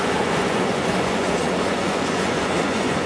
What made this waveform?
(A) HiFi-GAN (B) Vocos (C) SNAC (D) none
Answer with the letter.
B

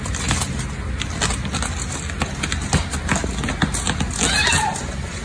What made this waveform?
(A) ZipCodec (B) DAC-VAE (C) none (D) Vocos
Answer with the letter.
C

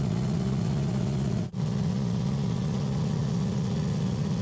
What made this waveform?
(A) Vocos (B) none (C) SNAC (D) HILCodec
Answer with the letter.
A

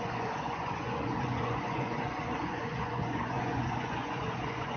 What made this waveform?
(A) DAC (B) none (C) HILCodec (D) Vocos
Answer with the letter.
D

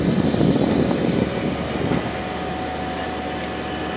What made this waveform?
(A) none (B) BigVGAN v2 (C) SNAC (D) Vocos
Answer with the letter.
A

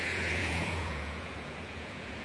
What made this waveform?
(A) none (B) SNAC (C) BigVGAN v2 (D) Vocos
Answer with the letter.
D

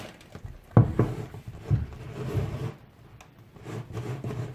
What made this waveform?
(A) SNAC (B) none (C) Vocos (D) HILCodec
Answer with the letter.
B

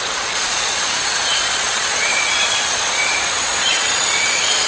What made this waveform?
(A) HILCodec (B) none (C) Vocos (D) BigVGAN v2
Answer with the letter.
C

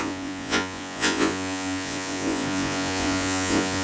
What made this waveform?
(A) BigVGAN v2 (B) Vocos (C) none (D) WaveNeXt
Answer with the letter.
B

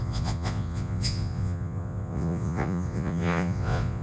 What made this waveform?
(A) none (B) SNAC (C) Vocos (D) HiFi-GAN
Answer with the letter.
C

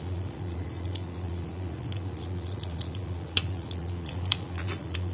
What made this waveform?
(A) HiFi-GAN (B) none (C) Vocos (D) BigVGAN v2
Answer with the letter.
C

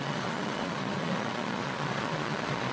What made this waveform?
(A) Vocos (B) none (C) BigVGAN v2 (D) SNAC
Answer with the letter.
A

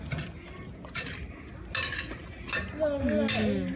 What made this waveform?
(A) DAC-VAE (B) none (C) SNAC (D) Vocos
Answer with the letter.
B